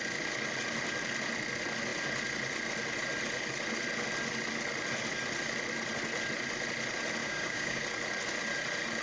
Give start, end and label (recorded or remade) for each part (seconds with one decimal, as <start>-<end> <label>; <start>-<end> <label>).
0.0-7.2 recorded; 7.2-7.8 remade; 7.8-9.0 recorded